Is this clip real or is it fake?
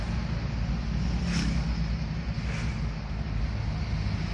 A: real